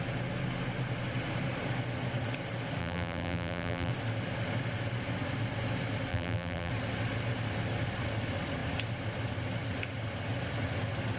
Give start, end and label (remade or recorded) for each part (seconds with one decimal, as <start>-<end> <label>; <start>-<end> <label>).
0.0-2.8 recorded; 2.8-3.9 remade; 3.9-6.1 recorded; 6.1-6.7 remade; 6.7-11.2 recorded